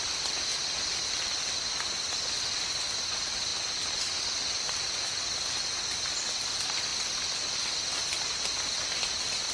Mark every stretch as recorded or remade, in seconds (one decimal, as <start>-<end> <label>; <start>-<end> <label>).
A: 0.0-9.5 recorded